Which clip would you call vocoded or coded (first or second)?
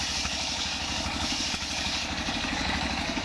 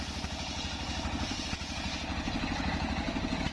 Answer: first